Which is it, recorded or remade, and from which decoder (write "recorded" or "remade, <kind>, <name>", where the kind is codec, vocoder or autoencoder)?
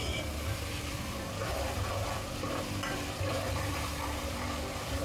remade, vocoder, BigVGAN v2